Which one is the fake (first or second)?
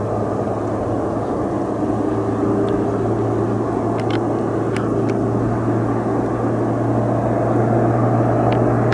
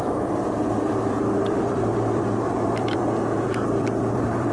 second